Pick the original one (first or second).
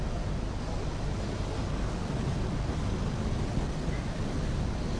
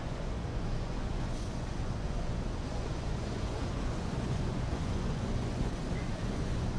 first